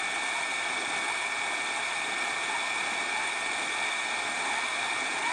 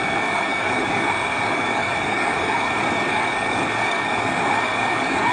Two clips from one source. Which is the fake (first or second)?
second